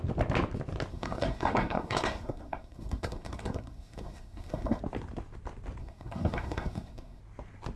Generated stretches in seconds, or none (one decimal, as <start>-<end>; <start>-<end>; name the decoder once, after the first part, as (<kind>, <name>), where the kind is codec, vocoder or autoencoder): 0.9-4.8 (codec, SNAC); 5.8-7.2